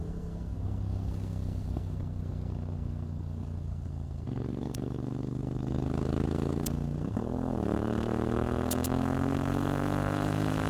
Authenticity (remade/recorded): remade